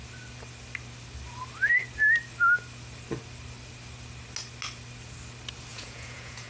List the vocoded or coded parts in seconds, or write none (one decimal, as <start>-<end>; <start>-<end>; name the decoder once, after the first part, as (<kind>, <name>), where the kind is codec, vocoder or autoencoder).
5.7-6.5 (vocoder, Vocos)